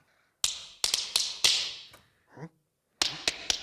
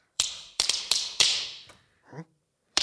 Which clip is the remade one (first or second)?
second